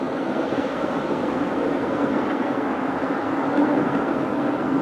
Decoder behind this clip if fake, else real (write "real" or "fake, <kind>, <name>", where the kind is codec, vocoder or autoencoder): fake, codec, SNAC